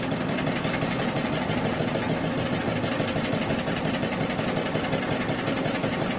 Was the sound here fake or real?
real